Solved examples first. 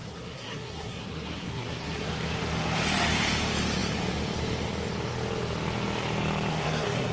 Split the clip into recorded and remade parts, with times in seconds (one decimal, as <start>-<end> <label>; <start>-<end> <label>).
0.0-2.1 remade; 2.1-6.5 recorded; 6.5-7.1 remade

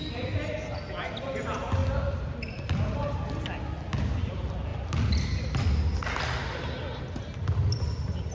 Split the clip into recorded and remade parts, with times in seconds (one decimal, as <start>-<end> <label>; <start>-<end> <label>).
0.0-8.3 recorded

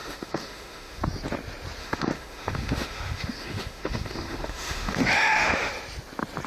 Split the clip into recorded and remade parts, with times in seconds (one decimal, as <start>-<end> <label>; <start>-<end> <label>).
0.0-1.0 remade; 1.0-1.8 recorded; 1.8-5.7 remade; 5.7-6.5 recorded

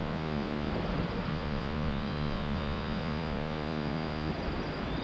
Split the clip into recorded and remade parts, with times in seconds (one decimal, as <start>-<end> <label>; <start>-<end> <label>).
0.0-0.7 remade; 0.7-1.3 recorded; 1.3-4.3 remade; 4.3-5.0 recorded

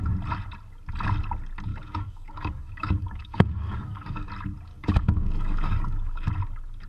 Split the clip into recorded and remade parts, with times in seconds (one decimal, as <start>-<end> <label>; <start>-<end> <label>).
0.0-1.7 recorded; 1.7-4.3 remade; 4.3-4.7 recorded; 4.7-6.3 remade; 6.3-6.9 recorded

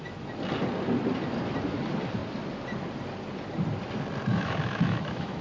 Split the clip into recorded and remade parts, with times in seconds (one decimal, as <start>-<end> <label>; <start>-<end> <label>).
0.0-4.3 recorded; 4.3-5.4 remade

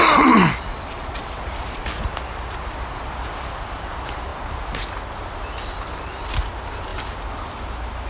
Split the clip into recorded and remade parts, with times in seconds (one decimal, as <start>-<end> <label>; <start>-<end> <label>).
0.0-0.7 recorded; 0.7-1.4 remade; 1.4-8.1 recorded

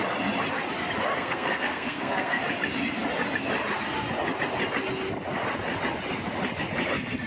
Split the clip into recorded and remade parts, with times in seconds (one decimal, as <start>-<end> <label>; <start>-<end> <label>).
0.0-1.1 recorded; 1.1-2.4 remade; 2.4-7.3 recorded